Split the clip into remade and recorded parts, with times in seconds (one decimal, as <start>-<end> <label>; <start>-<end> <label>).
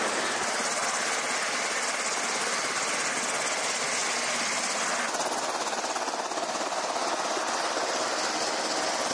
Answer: 0.0-9.1 recorded